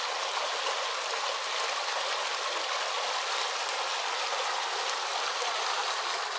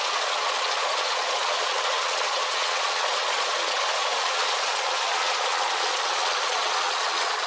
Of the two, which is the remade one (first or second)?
second